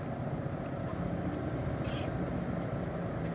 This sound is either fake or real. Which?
real